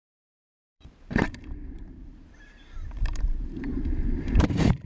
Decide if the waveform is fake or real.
fake